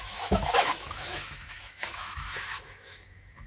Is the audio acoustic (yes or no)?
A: no